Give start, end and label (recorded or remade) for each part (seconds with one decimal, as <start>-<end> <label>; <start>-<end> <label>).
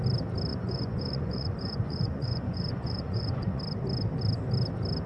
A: 0.0-0.5 recorded; 0.5-3.6 remade; 3.6-5.1 recorded